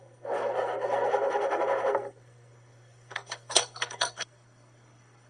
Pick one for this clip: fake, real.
fake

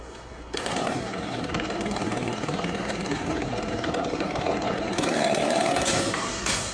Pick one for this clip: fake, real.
fake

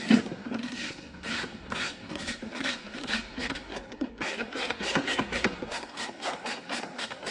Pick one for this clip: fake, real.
fake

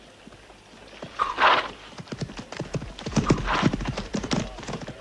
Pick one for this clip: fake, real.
real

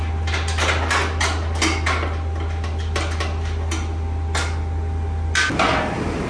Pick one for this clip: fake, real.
real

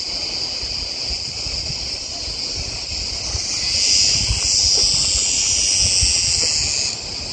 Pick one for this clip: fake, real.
real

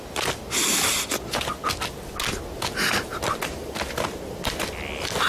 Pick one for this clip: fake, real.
real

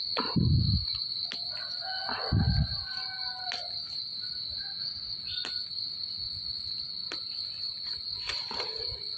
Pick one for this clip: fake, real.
real